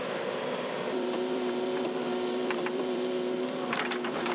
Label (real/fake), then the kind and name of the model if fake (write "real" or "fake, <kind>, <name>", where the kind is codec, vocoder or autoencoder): fake, vocoder, BigVGAN v2